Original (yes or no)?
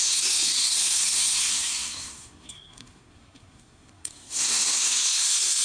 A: no